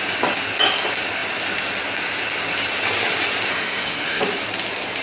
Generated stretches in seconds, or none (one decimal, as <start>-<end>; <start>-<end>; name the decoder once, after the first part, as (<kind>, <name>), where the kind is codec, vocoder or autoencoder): 3.5-4.2 (codec, SNAC)